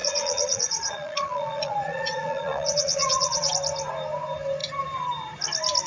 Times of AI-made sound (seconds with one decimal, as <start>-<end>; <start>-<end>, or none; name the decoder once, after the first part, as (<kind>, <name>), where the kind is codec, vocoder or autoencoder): 0.0-3.5 (vocoder, Vocos)